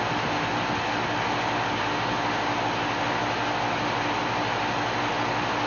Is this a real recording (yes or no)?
yes